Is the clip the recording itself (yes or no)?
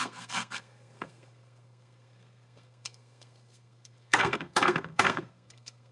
no